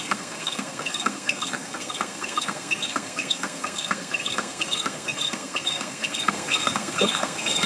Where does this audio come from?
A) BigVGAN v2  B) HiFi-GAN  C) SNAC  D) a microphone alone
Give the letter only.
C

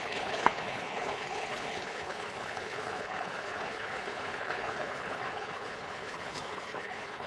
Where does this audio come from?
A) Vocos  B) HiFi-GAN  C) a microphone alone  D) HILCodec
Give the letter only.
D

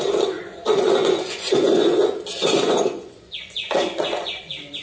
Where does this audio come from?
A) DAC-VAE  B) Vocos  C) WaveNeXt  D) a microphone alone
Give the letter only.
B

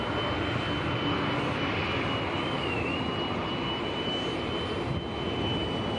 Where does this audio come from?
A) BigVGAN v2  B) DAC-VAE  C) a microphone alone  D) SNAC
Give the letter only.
C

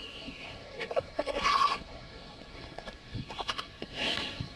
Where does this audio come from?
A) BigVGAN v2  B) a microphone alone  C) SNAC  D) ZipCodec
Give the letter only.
C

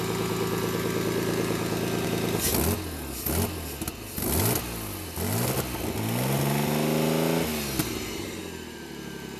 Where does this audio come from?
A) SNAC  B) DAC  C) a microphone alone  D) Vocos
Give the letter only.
C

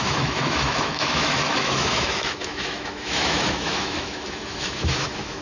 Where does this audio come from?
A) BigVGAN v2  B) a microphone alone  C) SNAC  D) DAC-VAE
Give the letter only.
D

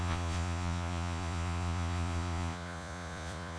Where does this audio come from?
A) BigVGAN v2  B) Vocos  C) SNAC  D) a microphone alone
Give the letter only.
B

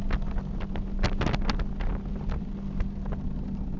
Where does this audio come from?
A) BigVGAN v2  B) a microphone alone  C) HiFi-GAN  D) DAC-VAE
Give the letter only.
B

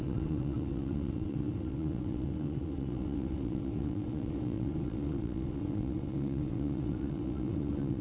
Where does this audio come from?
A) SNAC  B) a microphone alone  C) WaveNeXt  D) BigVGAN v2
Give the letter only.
C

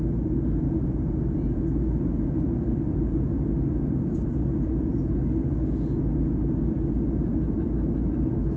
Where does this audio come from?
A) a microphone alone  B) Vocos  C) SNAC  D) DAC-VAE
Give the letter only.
A